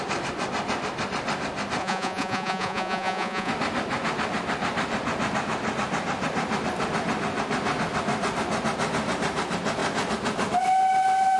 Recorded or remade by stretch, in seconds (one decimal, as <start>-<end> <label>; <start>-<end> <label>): 0.0-1.8 recorded; 1.8-3.5 remade; 3.5-11.4 recorded